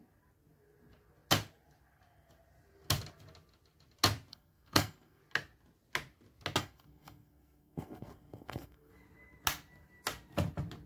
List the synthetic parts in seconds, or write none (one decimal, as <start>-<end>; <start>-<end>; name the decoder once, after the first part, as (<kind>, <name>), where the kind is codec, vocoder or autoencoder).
4.3-5.2 (codec, SNAC); 6.6-8.9

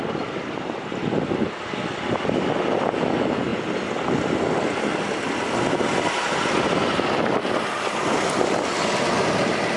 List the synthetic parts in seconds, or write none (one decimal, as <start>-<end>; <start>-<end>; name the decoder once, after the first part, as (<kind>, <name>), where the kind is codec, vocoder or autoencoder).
none

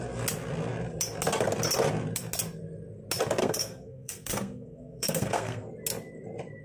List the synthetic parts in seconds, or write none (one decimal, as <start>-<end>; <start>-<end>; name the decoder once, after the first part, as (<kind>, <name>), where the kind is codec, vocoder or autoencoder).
3.4-5.7 (codec, SNAC)

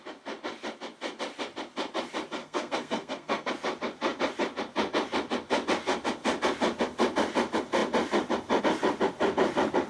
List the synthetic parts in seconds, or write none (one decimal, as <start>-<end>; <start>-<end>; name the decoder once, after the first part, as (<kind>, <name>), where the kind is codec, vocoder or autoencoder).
2.4-3.5 (codec, SNAC)